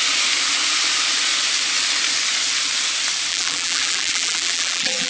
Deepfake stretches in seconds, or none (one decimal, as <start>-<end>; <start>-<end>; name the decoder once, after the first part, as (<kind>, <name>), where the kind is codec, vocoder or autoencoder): 3.3-5.1 (vocoder, BigVGAN v2)